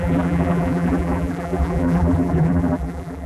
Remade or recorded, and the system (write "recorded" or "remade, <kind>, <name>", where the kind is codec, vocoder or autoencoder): remade, vocoder, BigVGAN v2